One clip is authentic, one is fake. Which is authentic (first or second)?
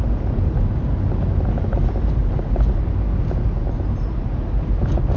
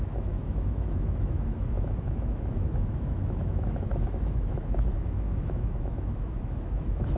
first